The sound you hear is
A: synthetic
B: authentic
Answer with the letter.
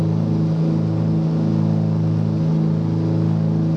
B